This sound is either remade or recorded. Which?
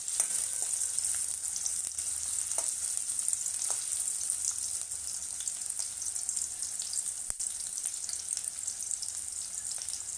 recorded